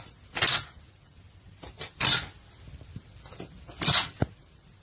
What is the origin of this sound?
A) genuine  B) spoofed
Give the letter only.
A